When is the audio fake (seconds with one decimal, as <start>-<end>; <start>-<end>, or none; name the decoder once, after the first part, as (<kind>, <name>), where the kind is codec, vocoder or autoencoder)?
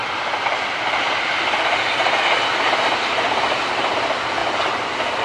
none